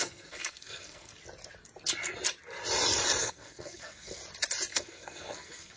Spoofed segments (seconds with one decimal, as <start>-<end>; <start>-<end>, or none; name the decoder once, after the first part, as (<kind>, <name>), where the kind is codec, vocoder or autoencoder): 0.0-1.1 (codec, SNAC); 3.2-4.2; 4.7-5.8